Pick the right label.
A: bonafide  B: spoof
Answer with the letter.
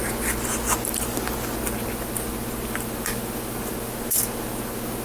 A